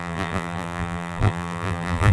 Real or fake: fake